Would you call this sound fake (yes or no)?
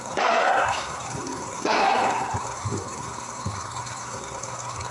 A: yes